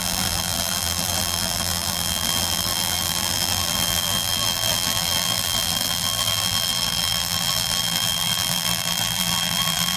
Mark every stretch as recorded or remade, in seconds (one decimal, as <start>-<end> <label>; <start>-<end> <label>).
0.0-10.0 remade